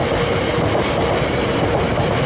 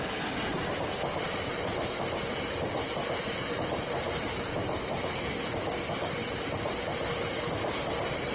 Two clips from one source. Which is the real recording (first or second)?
first